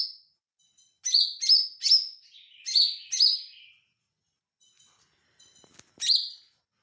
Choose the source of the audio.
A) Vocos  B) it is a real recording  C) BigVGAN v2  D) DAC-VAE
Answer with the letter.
B